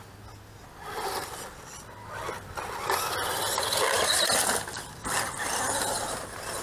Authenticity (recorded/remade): recorded